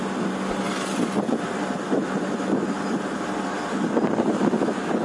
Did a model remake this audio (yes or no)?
no